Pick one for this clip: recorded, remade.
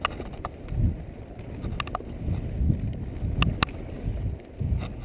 recorded